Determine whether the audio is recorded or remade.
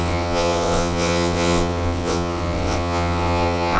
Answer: remade